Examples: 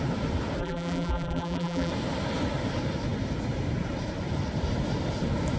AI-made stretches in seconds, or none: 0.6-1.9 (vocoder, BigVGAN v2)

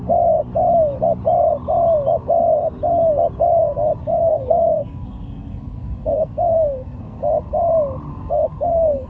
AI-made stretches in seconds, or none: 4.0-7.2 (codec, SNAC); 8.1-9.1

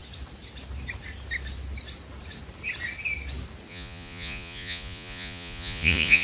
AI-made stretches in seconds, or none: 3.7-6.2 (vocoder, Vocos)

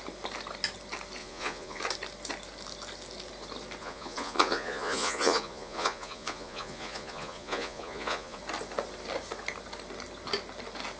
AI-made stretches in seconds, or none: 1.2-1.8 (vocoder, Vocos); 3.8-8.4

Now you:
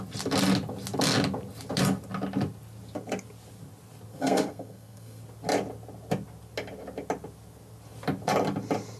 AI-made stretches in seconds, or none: 4.1-5.2 (codec, SNAC)

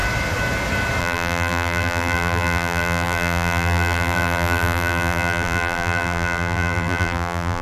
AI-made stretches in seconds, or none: 1.0-7.6 (vocoder, BigVGAN v2)

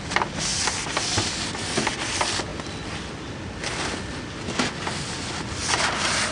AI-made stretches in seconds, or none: none

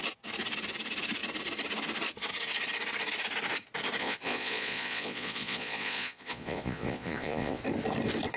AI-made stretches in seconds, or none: 4.0-7.6 (vocoder, Vocos)